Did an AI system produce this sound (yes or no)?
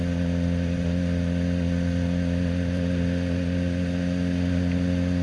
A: no